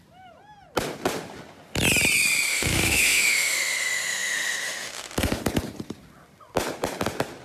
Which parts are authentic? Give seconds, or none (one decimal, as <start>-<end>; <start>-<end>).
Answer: 0.0-2.5; 5.4-7.4